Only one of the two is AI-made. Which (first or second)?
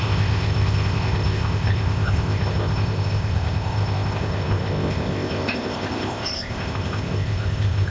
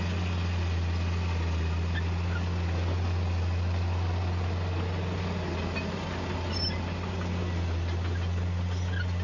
first